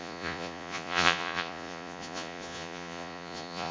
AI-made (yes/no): yes